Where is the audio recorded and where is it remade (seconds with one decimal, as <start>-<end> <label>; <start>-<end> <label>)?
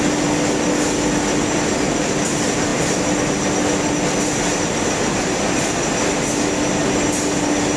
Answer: 0.0-2.7 recorded; 2.7-3.4 remade; 3.4-7.8 recorded